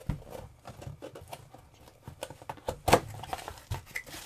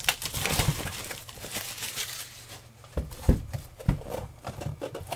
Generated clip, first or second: second